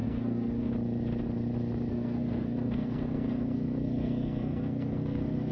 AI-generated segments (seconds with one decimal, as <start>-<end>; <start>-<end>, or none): 0.0-0.7; 1.9-5.5